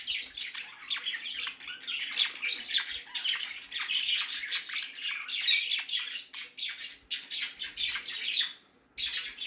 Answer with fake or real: real